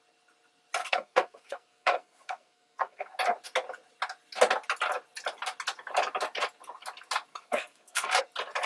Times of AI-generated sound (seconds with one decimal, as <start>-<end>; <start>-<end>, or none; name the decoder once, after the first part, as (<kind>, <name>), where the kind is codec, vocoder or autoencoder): 0.8-3.2 (codec, SNAC); 7.3-8.2